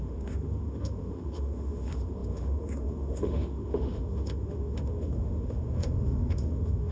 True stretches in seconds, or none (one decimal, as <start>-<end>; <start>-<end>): none